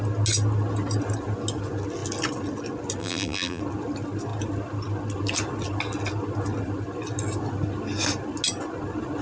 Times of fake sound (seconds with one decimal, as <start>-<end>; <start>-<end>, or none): 3.0-3.6

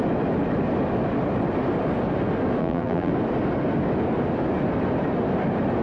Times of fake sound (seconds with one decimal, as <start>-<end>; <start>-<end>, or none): 2.6-3.1

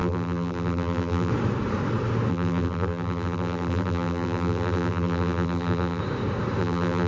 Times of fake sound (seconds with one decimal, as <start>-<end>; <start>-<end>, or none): 0.0-1.3; 2.3-6.0; 6.6-7.1

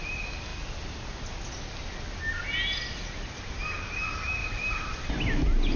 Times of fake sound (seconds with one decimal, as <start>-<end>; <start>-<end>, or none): 4.4-5.1